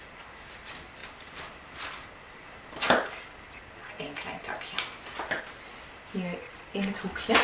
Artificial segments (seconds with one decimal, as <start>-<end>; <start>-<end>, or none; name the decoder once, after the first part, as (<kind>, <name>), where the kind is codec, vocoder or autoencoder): none